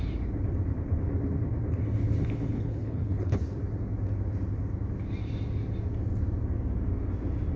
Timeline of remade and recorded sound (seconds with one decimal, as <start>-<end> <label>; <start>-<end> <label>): 0.0-2.5 recorded; 2.5-3.4 remade; 3.4-7.6 recorded